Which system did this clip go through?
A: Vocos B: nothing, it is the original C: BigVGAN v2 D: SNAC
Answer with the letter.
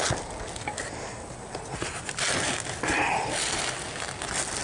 B